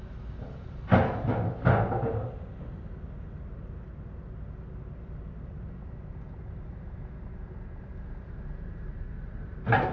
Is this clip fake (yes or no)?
no